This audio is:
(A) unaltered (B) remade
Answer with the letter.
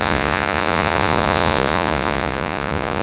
B